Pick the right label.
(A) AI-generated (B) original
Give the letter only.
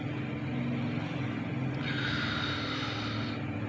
B